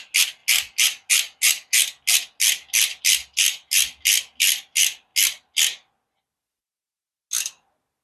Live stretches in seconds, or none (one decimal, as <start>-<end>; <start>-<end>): 0.0-8.0